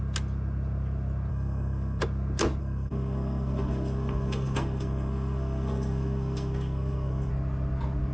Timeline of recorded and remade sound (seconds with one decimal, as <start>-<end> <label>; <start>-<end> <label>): 0.0-1.3 recorded; 1.3-2.0 remade; 2.0-2.6 recorded; 2.6-7.3 remade; 7.3-8.1 recorded